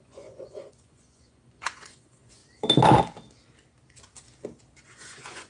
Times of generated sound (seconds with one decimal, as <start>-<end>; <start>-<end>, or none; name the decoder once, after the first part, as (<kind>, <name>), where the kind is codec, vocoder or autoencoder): 0.0-2.4 (vocoder, Vocos); 4.8-5.5